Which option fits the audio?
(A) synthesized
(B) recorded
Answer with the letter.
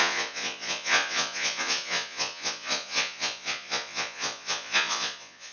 A